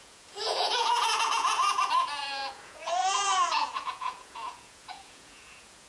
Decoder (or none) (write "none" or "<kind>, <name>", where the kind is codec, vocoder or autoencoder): vocoder, Vocos